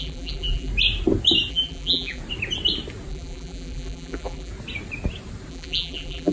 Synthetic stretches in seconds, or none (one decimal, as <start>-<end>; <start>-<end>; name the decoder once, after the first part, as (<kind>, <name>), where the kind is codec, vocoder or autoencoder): 0.0-0.7 (vocoder, BigVGAN v2); 1.5-2.2; 3.1-4.5; 5.5-6.3